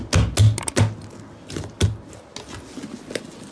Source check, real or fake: real